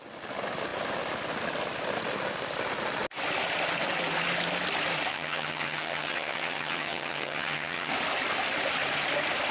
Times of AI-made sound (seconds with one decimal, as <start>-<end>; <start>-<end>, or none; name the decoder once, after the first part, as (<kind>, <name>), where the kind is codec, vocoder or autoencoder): 5.1-7.9 (vocoder, HiFi-GAN)